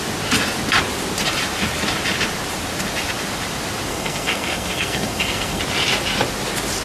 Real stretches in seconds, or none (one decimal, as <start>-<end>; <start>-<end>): 0.0-3.9; 5.6-6.8